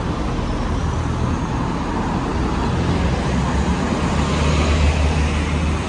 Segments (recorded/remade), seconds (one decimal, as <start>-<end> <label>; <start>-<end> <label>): 0.0-5.9 recorded